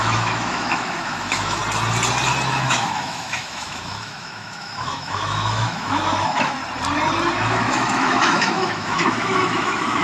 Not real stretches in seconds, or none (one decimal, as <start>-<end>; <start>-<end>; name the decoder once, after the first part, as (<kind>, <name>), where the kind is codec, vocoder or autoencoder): 0.0-1.6 (autoencoder, DAC-VAE); 2.5-6.6; 7.3-10.0